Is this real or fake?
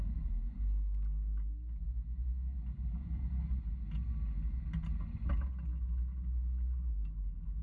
real